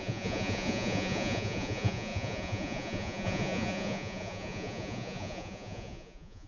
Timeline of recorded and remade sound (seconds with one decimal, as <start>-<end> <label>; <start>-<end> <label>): 0.0-6.5 remade